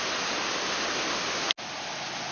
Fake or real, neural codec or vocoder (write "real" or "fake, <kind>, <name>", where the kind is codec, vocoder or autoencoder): real